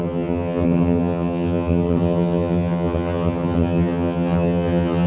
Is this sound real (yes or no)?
no